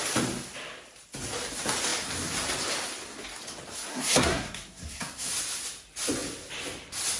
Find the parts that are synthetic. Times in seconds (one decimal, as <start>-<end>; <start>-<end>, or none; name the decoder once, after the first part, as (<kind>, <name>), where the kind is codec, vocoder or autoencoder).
3.9-5.3 (codec, SNAC)